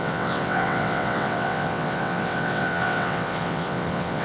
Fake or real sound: fake